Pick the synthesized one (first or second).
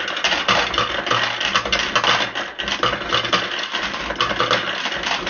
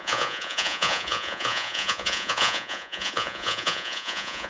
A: second